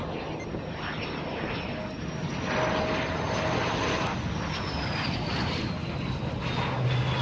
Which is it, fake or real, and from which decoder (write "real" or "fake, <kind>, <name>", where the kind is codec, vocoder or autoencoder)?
real